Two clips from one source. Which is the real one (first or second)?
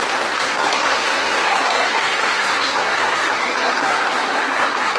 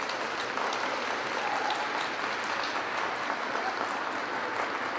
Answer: second